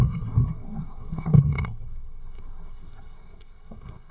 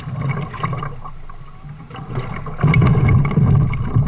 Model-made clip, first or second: first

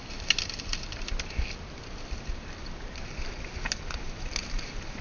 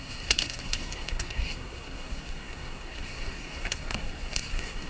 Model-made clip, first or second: second